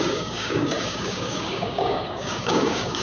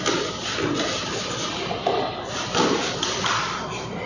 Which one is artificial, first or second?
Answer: first